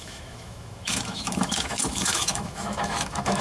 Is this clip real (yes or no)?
no